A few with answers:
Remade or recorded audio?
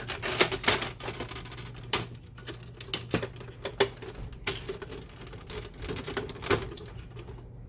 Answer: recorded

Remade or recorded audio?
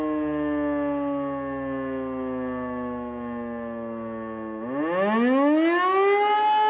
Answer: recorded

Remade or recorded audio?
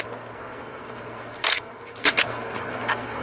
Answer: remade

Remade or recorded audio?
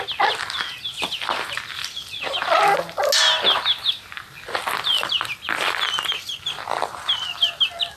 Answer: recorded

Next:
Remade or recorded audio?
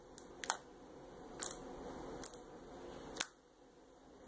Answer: recorded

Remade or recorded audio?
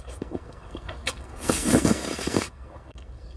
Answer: remade